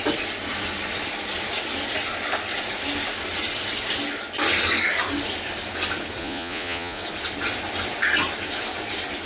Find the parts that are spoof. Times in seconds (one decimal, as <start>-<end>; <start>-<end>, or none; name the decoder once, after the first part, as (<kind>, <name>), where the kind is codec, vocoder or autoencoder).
6.2-7.0 (vocoder, Vocos)